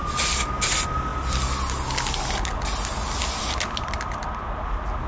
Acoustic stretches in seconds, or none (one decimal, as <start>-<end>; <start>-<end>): 0.0-5.1